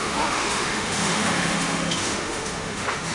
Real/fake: fake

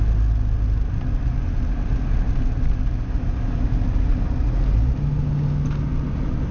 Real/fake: real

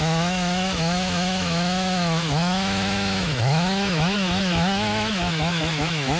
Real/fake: fake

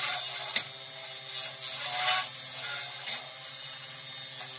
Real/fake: real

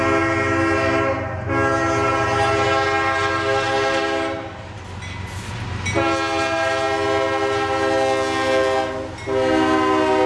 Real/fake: real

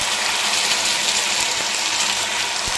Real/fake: real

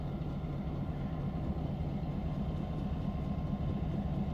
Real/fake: real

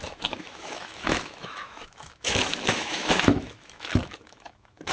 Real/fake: fake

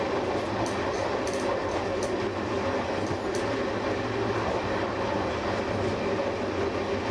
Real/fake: real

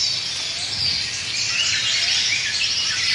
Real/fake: real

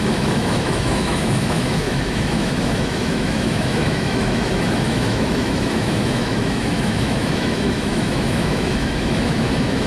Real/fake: fake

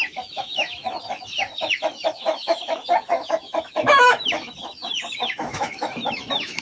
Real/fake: fake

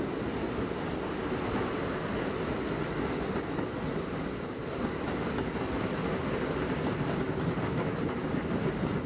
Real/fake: real